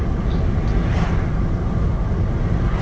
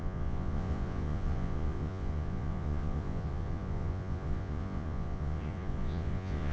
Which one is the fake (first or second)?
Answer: second